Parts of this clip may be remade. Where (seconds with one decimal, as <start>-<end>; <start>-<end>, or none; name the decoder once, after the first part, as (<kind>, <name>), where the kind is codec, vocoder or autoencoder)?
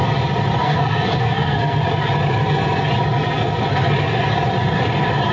0.6-1.8 (codec, SNAC)